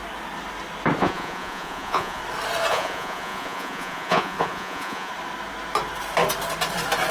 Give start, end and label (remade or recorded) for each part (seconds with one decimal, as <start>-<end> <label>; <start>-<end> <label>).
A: 0.0-1.0 recorded; 1.0-2.2 remade; 2.2-2.7 recorded; 2.7-5.1 remade; 5.1-7.1 recorded